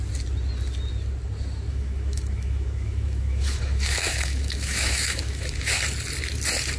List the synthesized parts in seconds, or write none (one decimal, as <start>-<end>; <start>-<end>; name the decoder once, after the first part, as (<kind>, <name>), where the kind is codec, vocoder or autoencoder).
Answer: 1.7-5.8 (autoencoder, DAC-VAE)